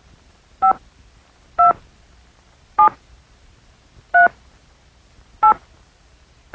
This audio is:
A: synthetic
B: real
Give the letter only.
B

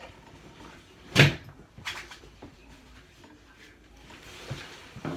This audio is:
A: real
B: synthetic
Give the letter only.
B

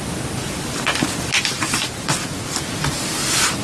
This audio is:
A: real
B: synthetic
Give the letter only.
A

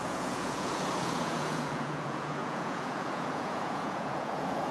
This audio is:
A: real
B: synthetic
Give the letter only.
B